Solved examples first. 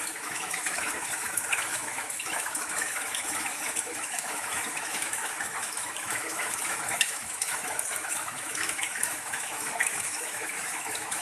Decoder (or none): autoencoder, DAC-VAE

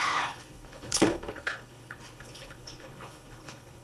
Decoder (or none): codec, HILCodec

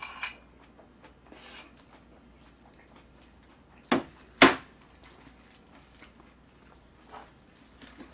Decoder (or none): none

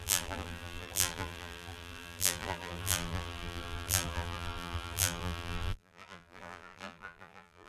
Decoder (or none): vocoder, BigVGAN v2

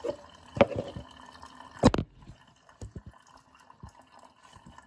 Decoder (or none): none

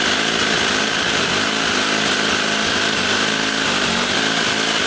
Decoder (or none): none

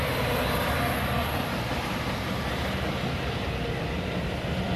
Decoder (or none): none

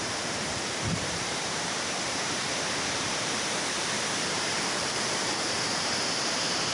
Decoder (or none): vocoder, BigVGAN v2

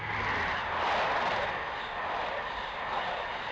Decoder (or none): none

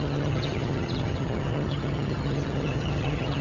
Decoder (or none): vocoder, HiFi-GAN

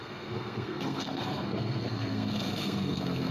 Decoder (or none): codec, SNAC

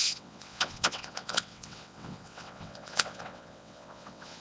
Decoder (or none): vocoder, WaveNeXt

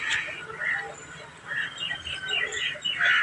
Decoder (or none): none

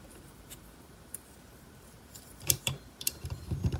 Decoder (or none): vocoder, BigVGAN v2